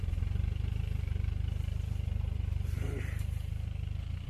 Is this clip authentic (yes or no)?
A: no